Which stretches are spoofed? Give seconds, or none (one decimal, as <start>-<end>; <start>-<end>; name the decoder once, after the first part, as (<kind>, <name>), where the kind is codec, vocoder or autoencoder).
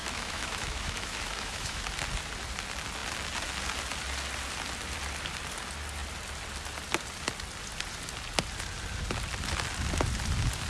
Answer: 0.0-1.8 (autoencoder, DAC-VAE)